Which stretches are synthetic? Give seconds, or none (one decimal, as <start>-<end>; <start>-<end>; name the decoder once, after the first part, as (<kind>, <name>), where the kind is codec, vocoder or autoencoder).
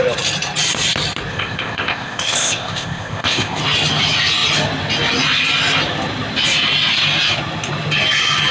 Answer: 1.3-3.6 (codec, ZipCodec)